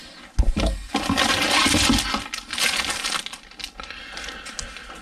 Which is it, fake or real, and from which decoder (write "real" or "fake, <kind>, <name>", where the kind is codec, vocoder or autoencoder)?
real